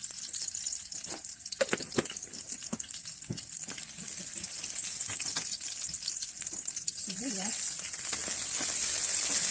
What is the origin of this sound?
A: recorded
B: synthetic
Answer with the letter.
A